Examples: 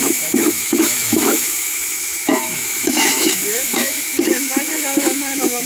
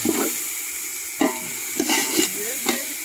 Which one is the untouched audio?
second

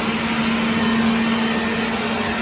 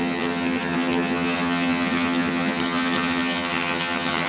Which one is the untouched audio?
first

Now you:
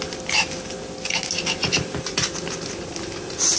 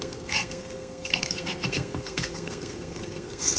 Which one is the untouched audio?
first